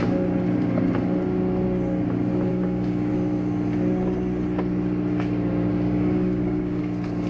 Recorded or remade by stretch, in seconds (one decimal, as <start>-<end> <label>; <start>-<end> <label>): 0.0-2.5 recorded; 2.5-3.1 remade; 3.1-5.7 recorded; 5.7-6.8 remade; 6.8-7.3 recorded